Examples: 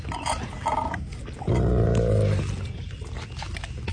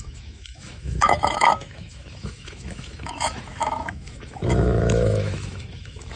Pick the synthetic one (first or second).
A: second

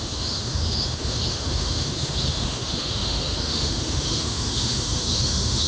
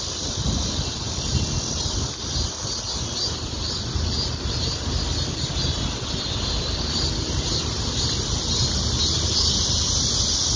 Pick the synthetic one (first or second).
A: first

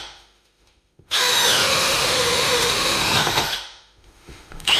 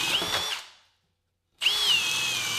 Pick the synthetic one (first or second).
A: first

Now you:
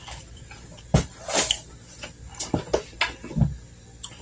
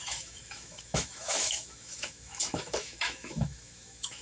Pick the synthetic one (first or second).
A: second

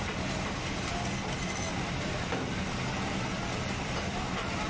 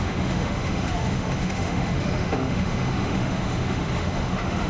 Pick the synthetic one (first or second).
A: second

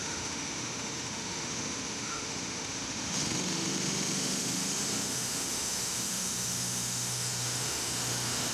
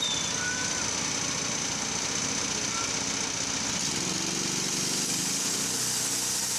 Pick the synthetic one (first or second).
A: first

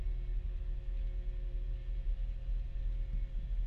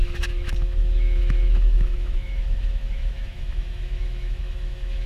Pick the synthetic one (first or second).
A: second